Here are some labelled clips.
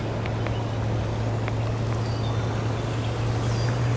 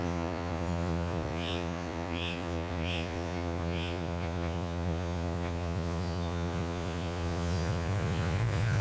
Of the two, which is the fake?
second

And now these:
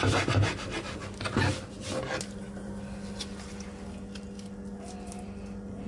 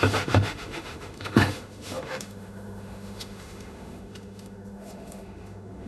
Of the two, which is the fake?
second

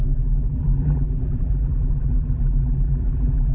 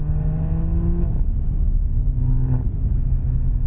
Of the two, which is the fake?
first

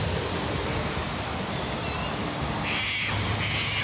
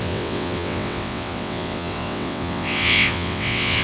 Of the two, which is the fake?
second